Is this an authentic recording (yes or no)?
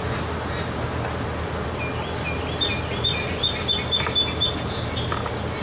yes